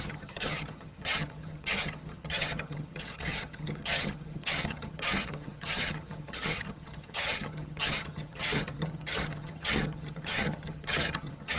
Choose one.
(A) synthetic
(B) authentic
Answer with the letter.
A